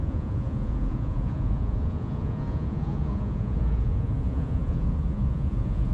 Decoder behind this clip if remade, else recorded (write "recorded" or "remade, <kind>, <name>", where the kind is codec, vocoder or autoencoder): remade, vocoder, Vocos